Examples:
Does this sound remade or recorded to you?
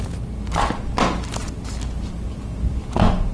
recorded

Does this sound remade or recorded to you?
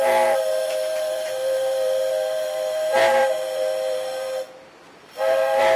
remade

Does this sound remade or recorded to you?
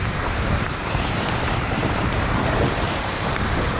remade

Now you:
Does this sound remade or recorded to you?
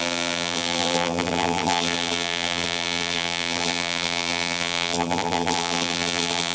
remade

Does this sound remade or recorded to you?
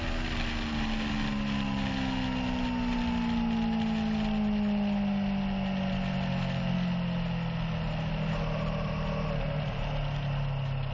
recorded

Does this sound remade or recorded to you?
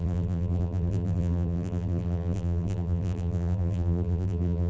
remade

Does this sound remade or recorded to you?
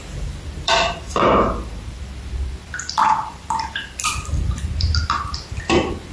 remade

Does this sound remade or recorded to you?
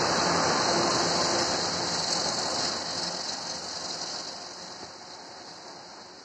recorded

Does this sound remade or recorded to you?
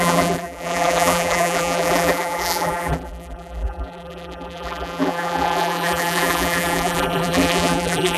remade